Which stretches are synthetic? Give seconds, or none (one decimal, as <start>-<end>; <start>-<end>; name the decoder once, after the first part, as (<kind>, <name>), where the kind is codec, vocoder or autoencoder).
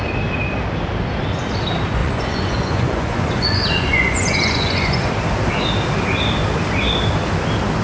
2.0-5.1 (vocoder, Vocos)